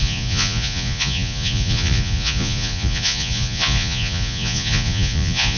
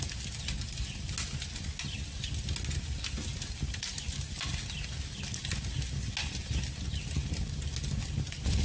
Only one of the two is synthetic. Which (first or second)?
first